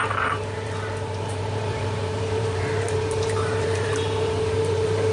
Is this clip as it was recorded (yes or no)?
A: no